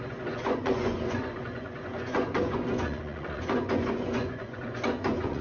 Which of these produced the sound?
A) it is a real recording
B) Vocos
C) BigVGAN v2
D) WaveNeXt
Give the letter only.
B